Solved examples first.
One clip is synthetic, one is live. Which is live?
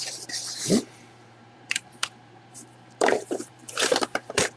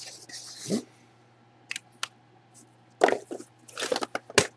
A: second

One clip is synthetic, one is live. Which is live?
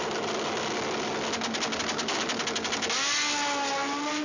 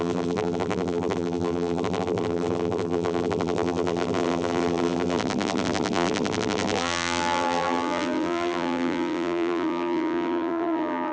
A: first